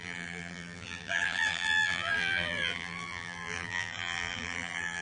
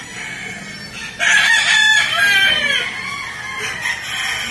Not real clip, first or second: first